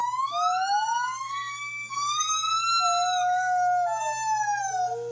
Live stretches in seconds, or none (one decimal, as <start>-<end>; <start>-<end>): 2.2-5.1